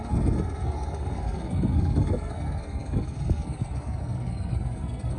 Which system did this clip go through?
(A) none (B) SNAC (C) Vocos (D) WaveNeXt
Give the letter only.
B